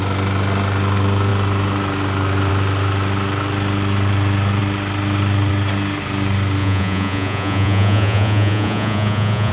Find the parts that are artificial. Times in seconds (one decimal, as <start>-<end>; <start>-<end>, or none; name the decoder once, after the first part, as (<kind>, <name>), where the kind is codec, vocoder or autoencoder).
6.6-9.5 (vocoder, Vocos)